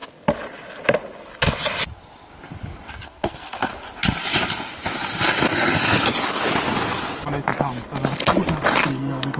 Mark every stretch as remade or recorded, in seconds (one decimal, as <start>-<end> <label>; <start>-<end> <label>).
0.0-2.9 recorded; 2.9-3.7 remade; 3.7-8.9 recorded; 8.9-9.4 remade